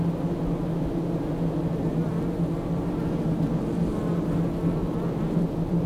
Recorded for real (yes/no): yes